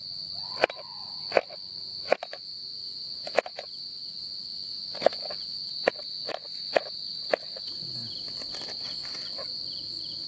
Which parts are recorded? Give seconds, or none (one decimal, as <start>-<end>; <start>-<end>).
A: 0.0-10.3